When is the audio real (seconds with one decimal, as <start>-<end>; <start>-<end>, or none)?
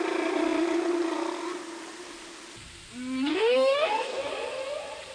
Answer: 0.0-3.3; 4.3-5.1